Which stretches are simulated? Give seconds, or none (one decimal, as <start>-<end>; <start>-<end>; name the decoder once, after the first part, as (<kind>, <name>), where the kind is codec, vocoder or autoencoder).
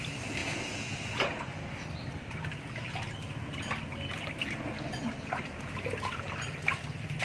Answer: 0.4-1.7 (vocoder, Vocos)